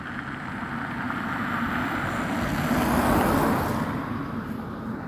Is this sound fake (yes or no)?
no